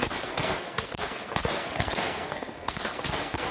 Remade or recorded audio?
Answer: remade